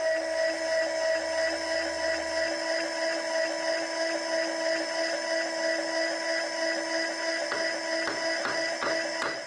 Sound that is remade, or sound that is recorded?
recorded